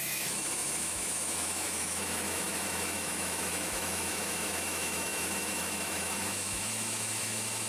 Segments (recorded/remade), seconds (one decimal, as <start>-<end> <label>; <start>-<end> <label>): 0.0-7.7 remade